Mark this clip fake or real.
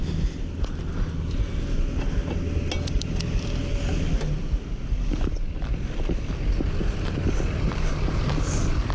real